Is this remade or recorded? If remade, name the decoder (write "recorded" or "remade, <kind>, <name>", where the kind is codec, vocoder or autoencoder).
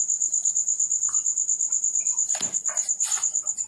recorded